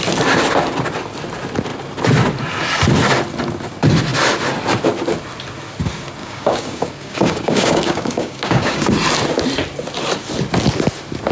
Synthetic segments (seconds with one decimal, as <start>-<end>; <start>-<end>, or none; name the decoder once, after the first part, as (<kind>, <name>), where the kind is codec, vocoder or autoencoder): 6.2-8.9 (codec, DAC)